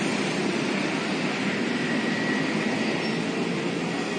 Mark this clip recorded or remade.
recorded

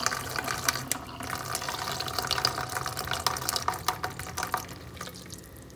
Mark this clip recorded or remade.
recorded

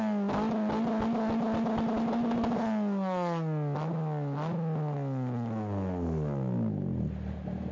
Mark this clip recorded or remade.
recorded